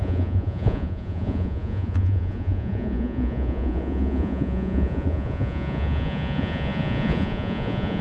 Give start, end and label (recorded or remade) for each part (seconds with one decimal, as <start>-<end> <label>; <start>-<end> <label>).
0.0-8.0 remade